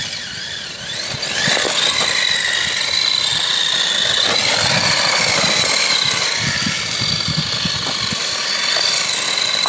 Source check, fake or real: real